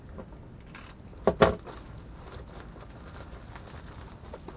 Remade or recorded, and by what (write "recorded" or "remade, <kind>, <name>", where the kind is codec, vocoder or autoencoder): recorded